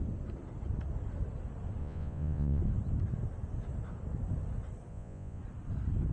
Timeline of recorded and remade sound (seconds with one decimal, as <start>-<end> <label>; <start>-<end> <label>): 0.0-1.8 recorded; 1.8-2.6 remade; 2.6-4.9 recorded; 4.9-5.4 remade; 5.4-6.1 recorded